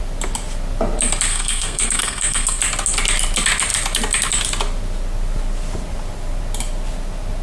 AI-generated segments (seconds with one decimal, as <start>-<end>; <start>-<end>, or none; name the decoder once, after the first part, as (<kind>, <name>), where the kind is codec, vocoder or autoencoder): 1.3-2.6 (codec, SNAC)